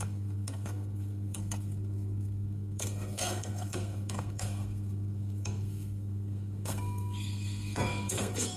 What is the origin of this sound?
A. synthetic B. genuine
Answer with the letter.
A